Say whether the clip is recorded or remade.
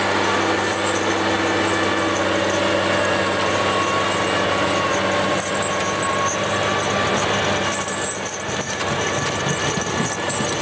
recorded